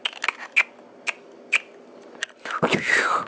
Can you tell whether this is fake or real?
real